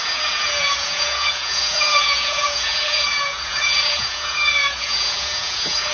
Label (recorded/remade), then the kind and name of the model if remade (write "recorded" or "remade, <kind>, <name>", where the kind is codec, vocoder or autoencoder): remade, vocoder, Vocos